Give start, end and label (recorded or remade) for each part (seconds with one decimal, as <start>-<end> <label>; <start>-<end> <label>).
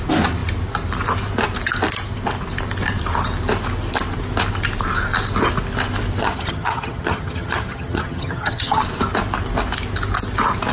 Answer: 0.0-6.2 recorded; 6.2-8.8 remade; 8.8-10.7 recorded